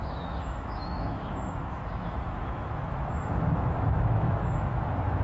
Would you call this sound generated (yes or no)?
yes